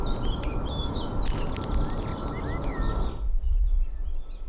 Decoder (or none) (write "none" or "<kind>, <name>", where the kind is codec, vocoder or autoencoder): none